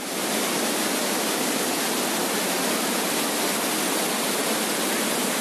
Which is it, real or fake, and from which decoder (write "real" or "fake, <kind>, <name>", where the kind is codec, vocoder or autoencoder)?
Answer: real